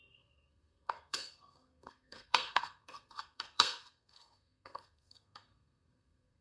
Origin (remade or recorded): remade